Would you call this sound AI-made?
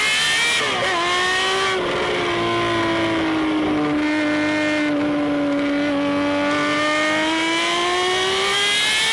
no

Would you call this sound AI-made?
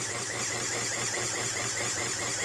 no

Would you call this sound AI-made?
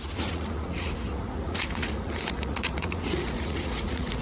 yes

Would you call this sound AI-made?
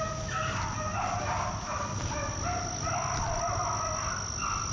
no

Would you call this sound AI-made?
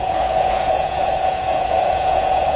yes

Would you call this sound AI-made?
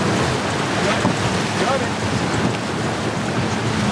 no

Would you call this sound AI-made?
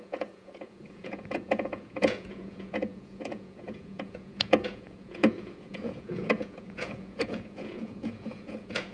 yes